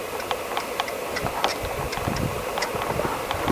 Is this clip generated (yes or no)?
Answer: no